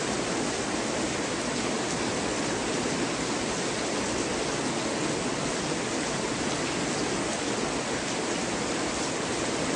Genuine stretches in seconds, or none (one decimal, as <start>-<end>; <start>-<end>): 0.0-9.8